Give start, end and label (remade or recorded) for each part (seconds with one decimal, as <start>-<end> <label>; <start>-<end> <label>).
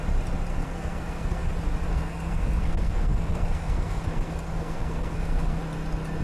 0.0-0.5 recorded; 0.5-1.5 remade; 1.5-1.9 recorded; 1.9-5.6 remade; 5.6-6.2 recorded